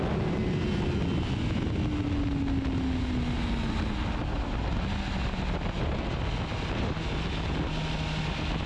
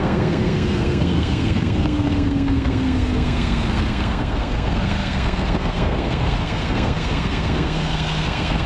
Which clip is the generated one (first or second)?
second